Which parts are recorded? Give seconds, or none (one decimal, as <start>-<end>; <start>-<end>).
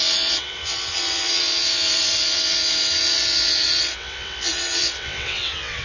none